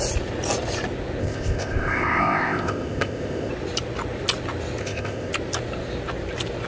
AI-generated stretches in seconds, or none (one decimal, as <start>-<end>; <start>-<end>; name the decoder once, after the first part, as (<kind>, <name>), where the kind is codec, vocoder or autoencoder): 1.2-3.5 (codec, ZipCodec); 4.8-5.3